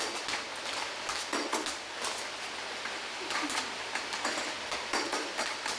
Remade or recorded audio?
recorded